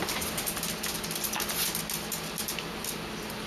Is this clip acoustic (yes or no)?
yes